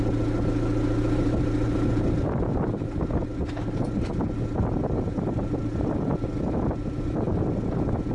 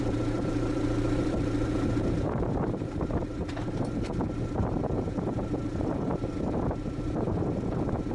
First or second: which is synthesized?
second